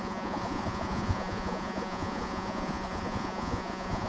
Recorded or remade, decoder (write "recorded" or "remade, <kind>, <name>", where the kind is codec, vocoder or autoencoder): remade, vocoder, Vocos